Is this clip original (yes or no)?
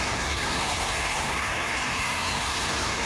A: no